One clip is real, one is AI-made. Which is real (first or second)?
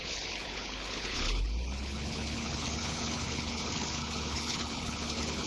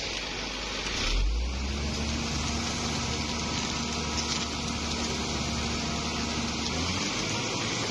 second